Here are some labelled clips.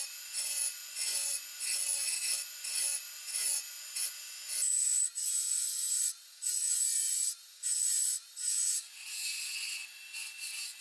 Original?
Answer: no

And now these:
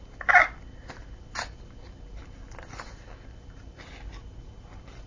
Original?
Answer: yes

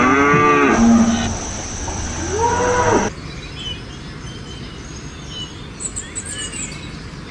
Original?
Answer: yes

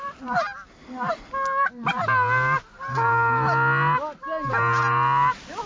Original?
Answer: yes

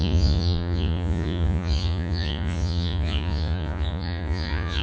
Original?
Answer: no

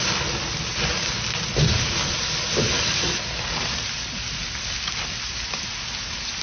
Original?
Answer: yes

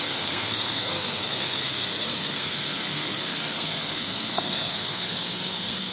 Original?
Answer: no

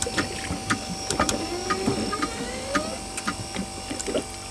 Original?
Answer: yes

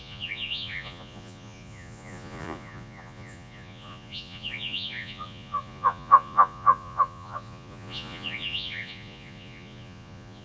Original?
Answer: no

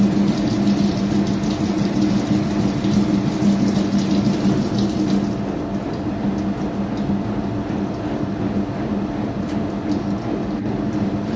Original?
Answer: yes